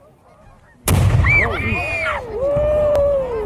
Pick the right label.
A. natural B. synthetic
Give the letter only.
A